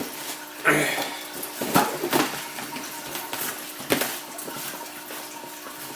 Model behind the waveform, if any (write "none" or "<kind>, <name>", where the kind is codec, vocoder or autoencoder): none